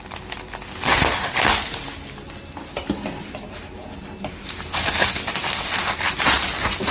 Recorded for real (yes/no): yes